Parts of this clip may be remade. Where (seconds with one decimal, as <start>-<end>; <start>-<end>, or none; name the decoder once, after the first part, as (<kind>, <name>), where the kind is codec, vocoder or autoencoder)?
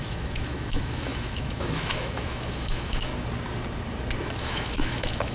0.0-3.1 (autoencoder, DAC-VAE); 4.3-5.3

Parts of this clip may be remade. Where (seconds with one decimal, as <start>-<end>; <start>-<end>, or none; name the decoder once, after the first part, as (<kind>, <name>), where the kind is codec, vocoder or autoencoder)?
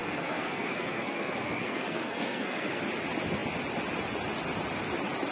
0.0-2.8 (codec, SNAC)